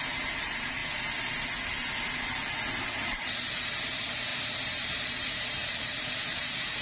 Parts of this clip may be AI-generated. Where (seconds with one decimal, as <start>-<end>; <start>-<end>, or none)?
0.0-0.8; 2.8-6.8